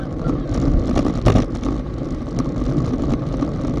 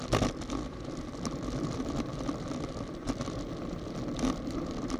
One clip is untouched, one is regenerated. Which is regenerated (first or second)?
second